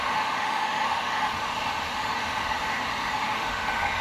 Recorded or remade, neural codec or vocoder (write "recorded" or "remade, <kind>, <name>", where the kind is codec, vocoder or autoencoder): remade, autoencoder, DAC-VAE